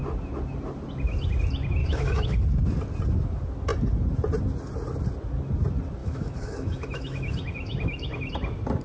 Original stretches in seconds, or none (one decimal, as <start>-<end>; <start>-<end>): 0.0-1.8; 2.4-6.0; 8.3-8.8